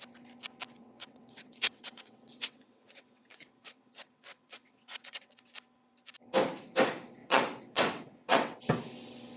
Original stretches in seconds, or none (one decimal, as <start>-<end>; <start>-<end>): 0.0-0.8; 5.4-7.2; 8.6-9.4